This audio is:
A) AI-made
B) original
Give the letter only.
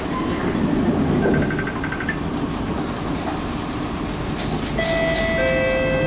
B